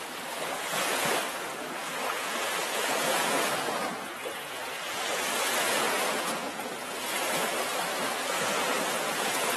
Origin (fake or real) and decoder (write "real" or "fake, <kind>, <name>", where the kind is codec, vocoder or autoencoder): fake, vocoder, Vocos